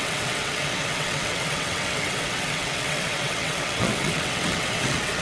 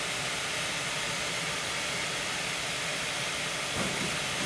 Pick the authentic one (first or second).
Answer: second